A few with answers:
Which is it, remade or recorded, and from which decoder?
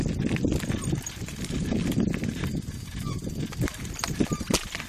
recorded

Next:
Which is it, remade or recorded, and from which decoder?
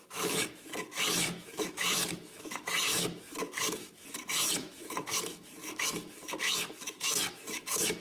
remade, autoencoder, DAC-VAE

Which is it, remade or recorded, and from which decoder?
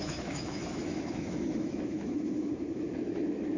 remade, autoencoder, DAC-VAE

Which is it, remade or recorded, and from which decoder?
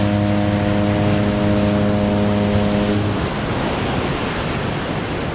recorded